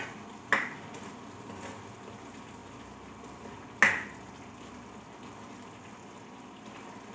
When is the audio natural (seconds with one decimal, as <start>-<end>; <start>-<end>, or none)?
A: 0.0-7.1